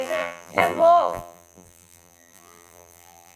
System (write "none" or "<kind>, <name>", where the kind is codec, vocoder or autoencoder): vocoder, BigVGAN v2